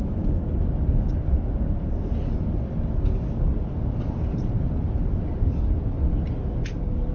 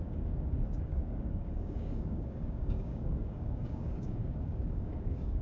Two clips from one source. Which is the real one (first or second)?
first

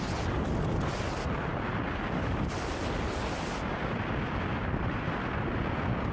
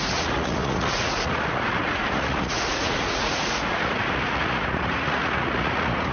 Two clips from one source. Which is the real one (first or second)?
first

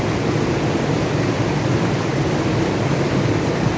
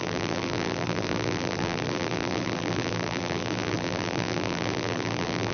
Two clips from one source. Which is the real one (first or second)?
first